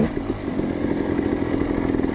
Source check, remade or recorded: recorded